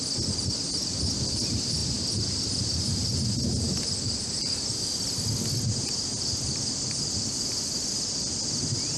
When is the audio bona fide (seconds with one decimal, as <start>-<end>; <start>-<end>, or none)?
0.0-9.0